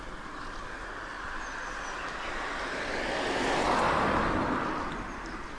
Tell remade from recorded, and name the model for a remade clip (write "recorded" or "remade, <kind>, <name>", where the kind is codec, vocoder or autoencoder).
recorded